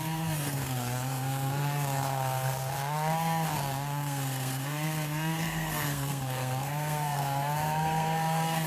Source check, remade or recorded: remade